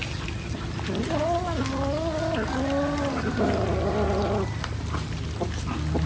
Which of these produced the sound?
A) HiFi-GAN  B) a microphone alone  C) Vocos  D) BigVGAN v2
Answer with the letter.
B